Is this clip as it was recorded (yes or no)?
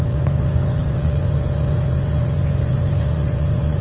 no